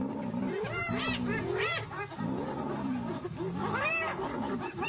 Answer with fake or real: real